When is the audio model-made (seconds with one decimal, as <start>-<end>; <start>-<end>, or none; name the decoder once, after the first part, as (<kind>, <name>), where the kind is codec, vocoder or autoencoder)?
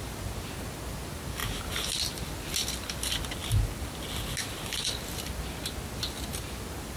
none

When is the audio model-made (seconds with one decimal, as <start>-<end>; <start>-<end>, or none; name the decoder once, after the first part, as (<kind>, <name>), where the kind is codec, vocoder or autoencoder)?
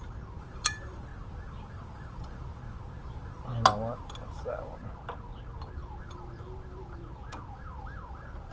0.0-1.1 (vocoder, BigVGAN v2); 1.7-2.6; 6.0-7.0; 8.1-8.5